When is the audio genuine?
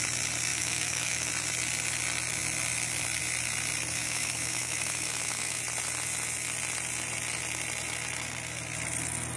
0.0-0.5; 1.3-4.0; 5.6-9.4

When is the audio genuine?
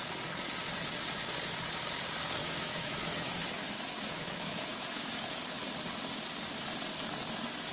0.0-2.4; 5.6-7.7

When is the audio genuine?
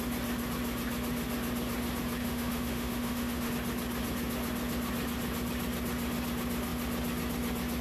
0.0-2.2; 3.5-7.8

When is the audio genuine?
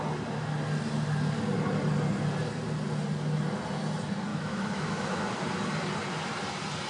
0.0-4.3; 5.3-6.9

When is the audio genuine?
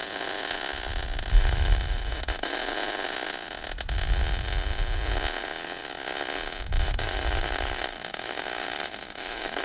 0.0-1.3; 2.6-6.8